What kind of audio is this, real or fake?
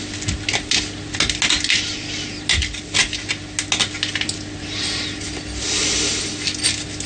real